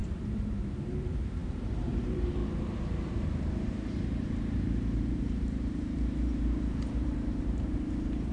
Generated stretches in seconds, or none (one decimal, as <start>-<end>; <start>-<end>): 0.0-8.3